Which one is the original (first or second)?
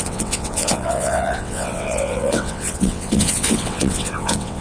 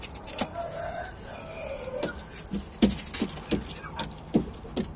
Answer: second